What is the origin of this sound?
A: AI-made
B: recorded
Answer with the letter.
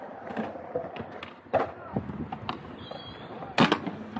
B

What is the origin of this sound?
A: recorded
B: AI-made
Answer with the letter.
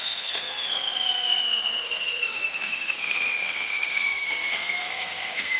B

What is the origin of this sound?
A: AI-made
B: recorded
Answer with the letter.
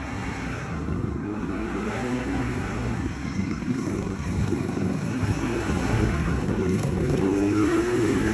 A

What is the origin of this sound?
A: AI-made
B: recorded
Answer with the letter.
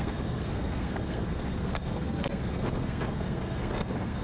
A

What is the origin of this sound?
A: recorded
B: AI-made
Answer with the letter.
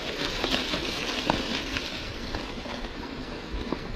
B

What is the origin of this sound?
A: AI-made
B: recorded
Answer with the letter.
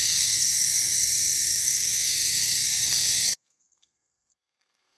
A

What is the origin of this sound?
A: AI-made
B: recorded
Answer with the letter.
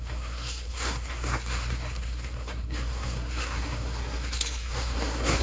A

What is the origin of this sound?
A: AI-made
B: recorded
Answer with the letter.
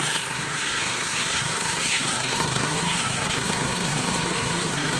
A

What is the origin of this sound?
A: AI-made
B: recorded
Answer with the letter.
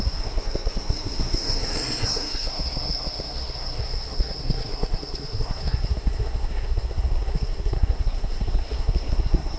A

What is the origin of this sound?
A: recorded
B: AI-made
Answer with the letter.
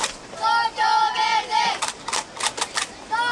A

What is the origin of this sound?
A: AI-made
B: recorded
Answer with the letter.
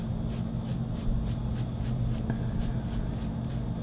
B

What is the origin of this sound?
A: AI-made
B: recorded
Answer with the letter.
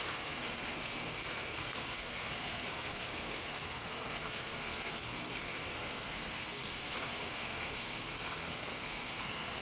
A